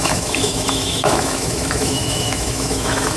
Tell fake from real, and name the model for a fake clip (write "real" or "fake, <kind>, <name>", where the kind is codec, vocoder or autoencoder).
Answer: fake, autoencoder, DAC-VAE